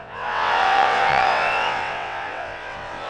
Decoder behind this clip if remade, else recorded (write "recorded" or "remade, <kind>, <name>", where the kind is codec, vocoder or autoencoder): remade, vocoder, WaveNeXt